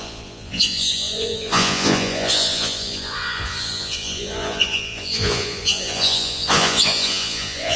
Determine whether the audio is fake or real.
fake